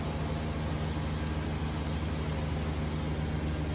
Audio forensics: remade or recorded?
recorded